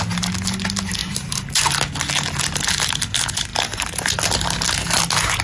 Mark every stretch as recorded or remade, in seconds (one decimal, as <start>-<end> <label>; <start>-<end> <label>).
0.0-1.0 recorded; 1.0-1.6 remade; 1.6-3.5 recorded; 3.5-4.2 remade; 4.2-5.4 recorded